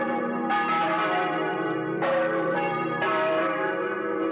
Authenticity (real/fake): fake